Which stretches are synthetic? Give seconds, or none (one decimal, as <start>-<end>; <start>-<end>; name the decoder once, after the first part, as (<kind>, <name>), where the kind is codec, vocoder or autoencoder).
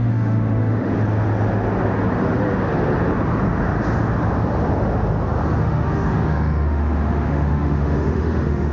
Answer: 0.0-0.9 (autoencoder, DAC-VAE); 5.6-8.7